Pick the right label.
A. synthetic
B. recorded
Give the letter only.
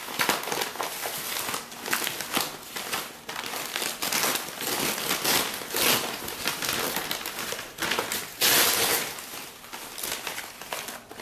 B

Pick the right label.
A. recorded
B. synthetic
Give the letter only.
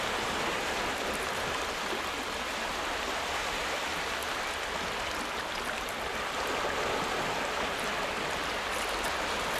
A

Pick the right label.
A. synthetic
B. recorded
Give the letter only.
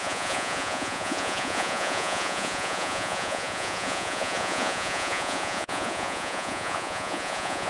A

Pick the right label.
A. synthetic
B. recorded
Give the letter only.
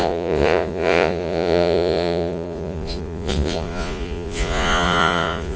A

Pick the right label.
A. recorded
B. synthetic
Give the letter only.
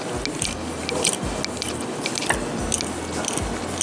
A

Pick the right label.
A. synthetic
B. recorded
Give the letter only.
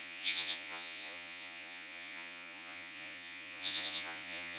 A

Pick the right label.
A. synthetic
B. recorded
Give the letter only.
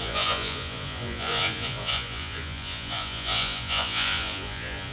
A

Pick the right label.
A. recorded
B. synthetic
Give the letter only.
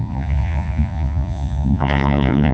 B